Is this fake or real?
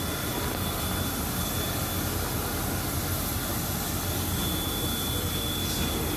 real